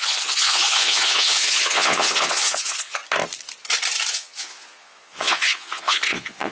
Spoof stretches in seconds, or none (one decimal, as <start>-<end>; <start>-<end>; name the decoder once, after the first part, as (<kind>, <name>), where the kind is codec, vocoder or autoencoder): 0.0-3.0 (vocoder, Vocos); 4.1-6.5